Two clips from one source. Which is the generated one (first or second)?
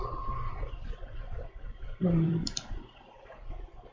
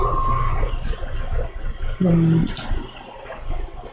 first